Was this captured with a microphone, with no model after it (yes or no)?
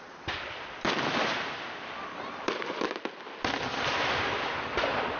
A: no